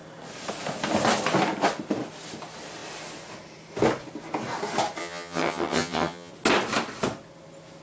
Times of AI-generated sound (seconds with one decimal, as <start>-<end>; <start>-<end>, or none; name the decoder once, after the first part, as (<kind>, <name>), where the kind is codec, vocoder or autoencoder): 5.0-6.3 (vocoder, HiFi-GAN)